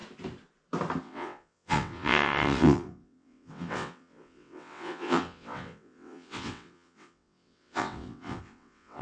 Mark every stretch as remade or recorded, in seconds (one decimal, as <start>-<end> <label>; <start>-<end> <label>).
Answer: 0.0-1.0 recorded; 1.0-9.0 remade